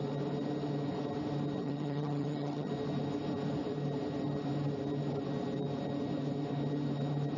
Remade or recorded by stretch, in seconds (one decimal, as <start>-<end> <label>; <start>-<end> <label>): 0.0-1.6 recorded; 1.6-2.7 remade; 2.7-7.4 recorded